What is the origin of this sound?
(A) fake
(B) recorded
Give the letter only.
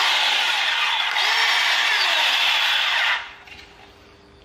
A